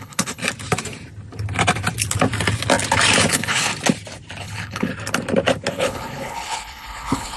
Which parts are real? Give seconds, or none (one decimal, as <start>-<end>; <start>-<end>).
0.4-3.3; 3.7-4.4; 4.9-5.7